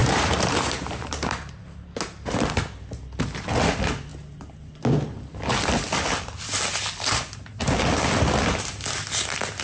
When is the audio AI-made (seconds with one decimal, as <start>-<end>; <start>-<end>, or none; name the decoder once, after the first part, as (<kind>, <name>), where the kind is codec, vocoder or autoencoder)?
0.0-1.5 (vocoder, BigVGAN v2)

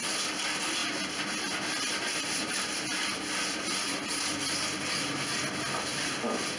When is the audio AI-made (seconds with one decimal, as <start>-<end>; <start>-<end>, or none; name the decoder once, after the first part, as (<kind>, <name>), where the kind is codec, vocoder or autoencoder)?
none

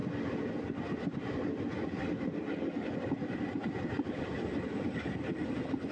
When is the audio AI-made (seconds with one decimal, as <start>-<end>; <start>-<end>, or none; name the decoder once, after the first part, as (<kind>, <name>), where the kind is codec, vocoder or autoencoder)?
none

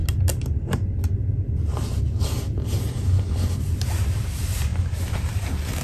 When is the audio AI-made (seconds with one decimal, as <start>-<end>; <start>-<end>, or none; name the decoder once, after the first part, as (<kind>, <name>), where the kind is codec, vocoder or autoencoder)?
3.5-4.7 (vocoder, BigVGAN v2); 5.2-5.8

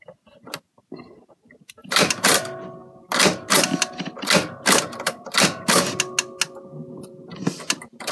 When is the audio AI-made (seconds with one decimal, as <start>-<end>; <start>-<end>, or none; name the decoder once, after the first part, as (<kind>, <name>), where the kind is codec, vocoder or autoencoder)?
1.8-2.4 (vocoder, BigVGAN v2)

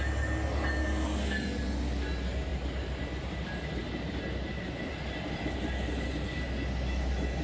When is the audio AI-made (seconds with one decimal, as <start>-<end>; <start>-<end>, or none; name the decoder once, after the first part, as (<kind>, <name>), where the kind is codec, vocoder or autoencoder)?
none

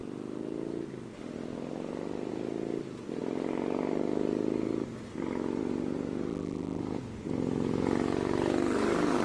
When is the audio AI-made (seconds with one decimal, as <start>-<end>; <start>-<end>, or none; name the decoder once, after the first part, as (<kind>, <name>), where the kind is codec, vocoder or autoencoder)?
6.3-6.8 (vocoder, BigVGAN v2)